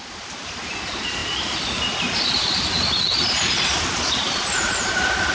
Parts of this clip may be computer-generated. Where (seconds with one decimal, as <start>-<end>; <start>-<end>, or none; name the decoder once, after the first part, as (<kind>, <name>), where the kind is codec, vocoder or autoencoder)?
none